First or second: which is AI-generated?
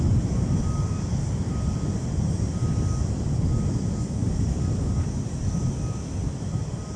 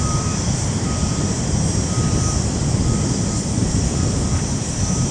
second